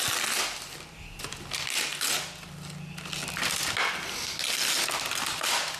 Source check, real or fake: real